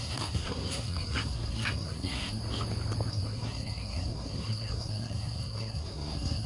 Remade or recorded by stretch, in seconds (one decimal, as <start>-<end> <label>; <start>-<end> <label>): 0.0-2.4 remade; 2.4-3.1 recorded; 3.1-6.5 remade